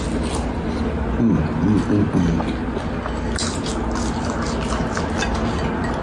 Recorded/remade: recorded